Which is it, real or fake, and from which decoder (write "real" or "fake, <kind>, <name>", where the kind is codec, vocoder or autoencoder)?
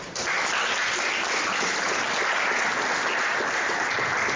real